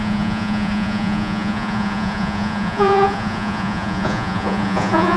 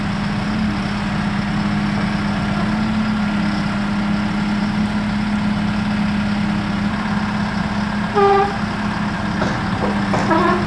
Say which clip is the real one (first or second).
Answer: second